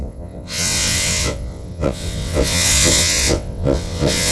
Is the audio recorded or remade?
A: remade